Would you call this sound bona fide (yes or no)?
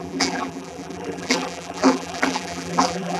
no